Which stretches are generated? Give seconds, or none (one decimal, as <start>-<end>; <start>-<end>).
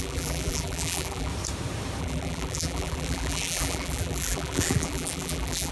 0.0-1.3; 2.0-5.7